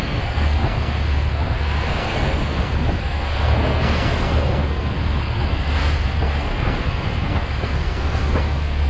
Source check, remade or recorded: remade